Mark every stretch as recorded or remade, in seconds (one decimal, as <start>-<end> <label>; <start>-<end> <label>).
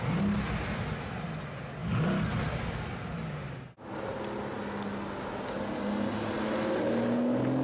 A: 0.0-7.6 recorded